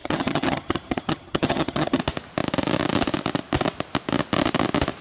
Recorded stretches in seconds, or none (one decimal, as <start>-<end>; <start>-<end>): 2.0-5.0